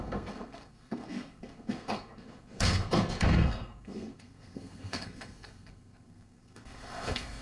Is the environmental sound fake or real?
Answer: fake